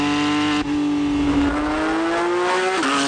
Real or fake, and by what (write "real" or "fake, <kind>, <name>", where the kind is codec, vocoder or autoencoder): real